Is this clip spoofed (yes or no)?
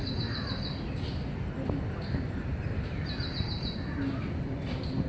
no